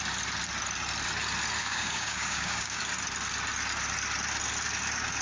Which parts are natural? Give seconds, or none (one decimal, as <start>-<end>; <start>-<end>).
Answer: 0.0-1.6; 2.8-5.2

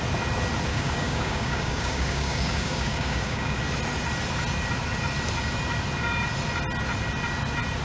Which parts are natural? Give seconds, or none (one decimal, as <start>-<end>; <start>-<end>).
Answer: 0.0-0.7; 3.6-7.8

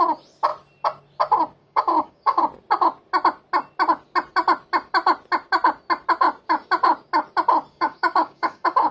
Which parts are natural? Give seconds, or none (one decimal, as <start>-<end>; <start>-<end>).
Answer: 0.0-1.6; 2.4-7.7

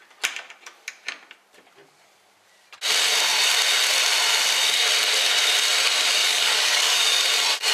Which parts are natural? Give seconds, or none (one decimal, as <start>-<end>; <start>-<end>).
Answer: 0.0-6.2; 7.2-7.7